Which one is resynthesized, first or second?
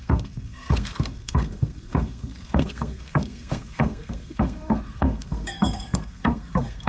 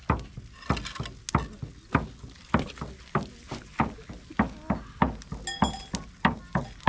first